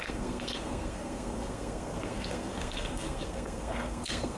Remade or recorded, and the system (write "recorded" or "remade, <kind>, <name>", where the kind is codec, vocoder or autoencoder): remade, codec, SNAC